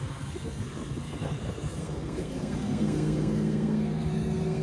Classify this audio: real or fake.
fake